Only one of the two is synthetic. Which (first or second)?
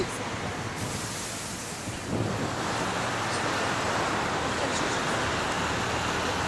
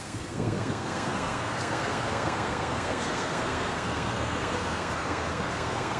second